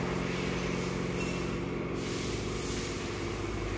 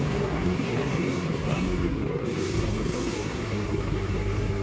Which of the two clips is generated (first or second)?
second